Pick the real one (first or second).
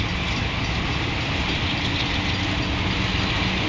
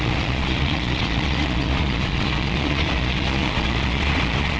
first